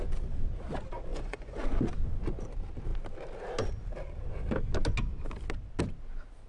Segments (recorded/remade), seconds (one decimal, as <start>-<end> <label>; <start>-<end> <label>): 0.0-1.1 recorded; 1.1-1.6 remade; 1.6-6.5 recorded